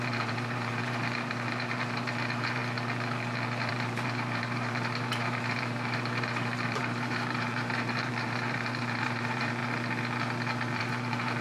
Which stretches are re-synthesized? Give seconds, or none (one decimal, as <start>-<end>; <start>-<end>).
0.0-2.6; 3.7-9.6; 10.8-11.4